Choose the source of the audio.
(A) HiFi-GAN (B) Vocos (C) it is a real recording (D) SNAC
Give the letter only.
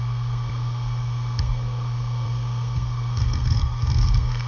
D